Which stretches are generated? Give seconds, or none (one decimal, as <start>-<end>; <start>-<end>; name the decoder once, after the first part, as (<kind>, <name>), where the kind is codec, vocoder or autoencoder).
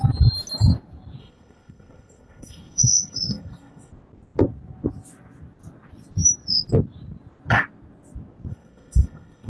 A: 1.2-3.9 (codec, SNAC); 8.5-9.5